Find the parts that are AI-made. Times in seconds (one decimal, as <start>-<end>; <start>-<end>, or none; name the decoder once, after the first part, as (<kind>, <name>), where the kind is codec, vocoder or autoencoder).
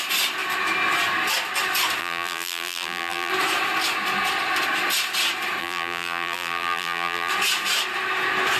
2.0-3.3 (vocoder, BigVGAN v2); 5.6-7.3